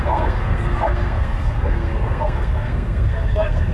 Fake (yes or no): yes